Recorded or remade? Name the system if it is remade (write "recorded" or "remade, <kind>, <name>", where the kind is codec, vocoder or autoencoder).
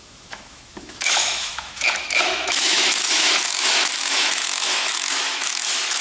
remade, autoencoder, DAC-VAE